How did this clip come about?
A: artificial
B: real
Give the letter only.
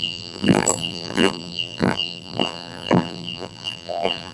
A